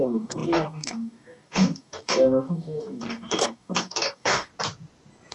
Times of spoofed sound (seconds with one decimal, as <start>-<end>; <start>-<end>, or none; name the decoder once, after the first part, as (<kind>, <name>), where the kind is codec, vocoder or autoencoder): 0.0-4.5 (codec, DAC)